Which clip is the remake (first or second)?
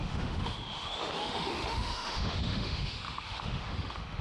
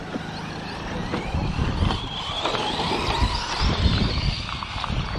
first